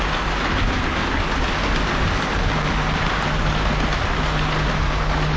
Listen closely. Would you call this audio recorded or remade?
recorded